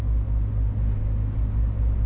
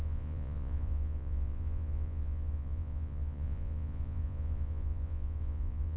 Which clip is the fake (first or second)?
second